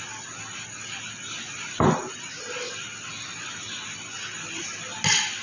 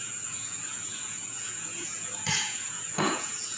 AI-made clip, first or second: second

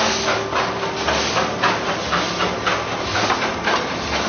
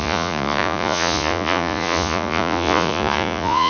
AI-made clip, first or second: second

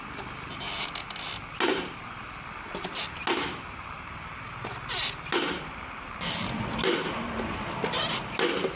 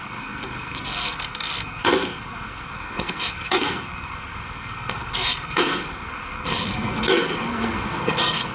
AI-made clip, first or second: second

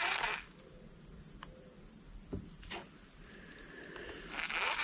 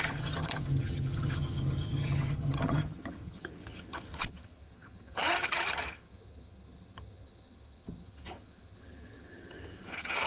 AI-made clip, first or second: second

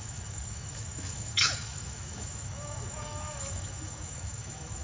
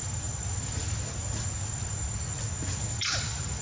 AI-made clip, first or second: first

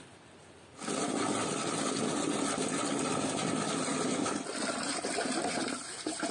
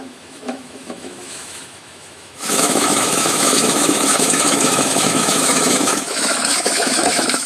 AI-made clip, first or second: second